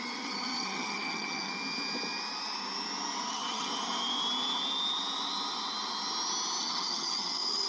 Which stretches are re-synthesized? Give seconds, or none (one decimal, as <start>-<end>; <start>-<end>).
0.0-1.5; 3.3-3.7; 6.6-7.7